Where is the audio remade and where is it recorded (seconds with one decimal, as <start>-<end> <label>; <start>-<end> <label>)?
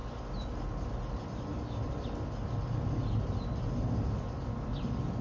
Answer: 0.0-5.2 recorded